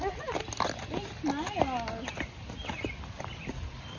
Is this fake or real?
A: real